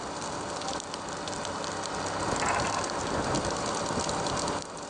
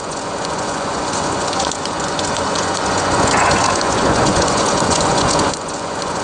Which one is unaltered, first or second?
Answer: first